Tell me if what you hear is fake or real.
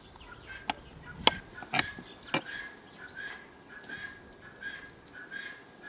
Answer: real